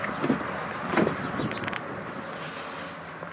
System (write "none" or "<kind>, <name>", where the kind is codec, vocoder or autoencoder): none